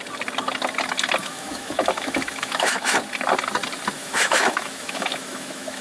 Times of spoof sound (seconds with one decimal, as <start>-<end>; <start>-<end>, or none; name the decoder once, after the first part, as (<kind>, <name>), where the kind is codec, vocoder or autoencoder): 1.2-3.0 (autoencoder, DAC-VAE); 4.0-5.8